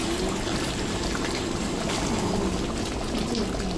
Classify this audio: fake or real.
real